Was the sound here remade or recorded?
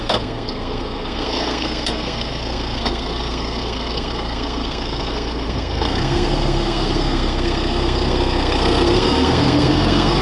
remade